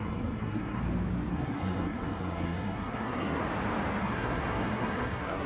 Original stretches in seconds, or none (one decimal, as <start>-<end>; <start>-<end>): 0.8-1.3; 3.4-4.0

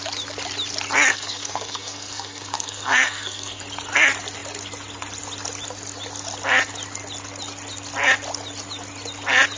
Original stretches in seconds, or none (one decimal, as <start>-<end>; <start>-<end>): 0.0-1.1; 3.6-9.6

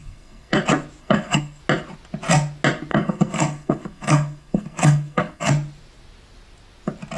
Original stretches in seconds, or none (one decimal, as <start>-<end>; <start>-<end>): 0.6-1.0; 1.6-2.9; 5.5-7.2

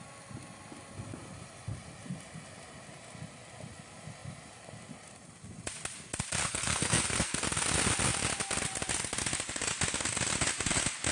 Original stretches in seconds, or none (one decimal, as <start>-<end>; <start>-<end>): 0.0-6.4; 7.4-11.1

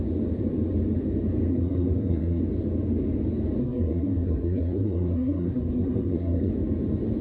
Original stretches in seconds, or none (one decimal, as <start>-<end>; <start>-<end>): 0.0-1.5; 2.4-3.6; 6.5-7.2

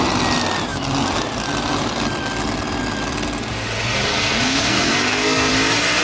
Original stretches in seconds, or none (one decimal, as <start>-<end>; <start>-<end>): 0.0-4.1; 5.5-6.0